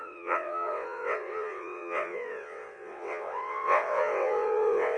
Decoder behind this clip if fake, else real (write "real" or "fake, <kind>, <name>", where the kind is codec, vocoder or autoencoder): fake, vocoder, WaveNeXt